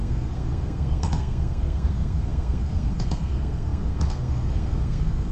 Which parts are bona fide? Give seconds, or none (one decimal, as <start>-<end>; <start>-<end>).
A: none